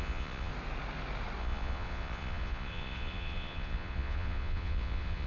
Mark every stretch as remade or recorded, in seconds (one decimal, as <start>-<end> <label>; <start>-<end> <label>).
0.0-0.5 remade; 0.5-1.4 recorded; 1.4-5.3 remade